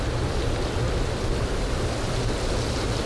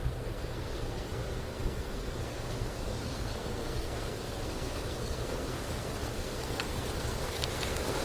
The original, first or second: first